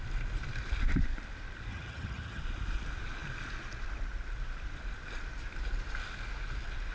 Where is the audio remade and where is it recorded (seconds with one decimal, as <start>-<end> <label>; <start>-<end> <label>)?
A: 0.0-1.7 recorded; 1.7-2.4 remade; 2.4-6.9 recorded